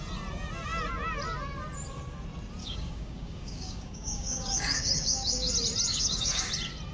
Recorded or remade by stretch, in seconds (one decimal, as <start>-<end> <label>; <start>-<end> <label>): 0.0-2.6 recorded; 2.6-5.5 remade; 5.5-5.9 recorded; 5.9-6.5 remade; 6.5-6.9 recorded